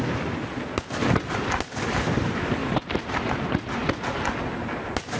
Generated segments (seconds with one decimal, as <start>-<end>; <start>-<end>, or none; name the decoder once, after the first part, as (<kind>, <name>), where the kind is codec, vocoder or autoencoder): 2.6-3.3 (vocoder, BigVGAN v2)